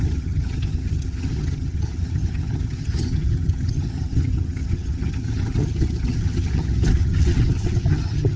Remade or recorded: remade